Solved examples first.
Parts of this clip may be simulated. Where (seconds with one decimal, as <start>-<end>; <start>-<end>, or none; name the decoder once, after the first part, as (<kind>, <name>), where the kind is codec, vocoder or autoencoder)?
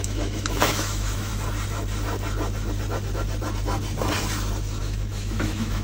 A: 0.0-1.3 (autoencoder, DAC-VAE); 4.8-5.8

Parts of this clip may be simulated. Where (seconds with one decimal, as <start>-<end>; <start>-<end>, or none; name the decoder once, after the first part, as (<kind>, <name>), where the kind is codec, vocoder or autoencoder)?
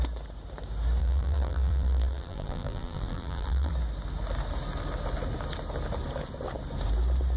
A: 1.0-3.7 (vocoder, BigVGAN v2)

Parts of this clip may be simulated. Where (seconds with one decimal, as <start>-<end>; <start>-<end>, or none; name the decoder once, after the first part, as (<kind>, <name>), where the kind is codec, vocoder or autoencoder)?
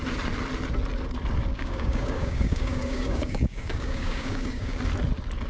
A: 1.5-4.8 (codec, DAC)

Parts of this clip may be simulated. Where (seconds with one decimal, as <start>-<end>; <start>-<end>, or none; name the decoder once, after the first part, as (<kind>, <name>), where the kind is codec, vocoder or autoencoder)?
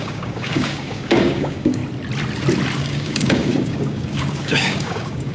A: 0.0-1.8 (codec, DAC); 2.8-5.3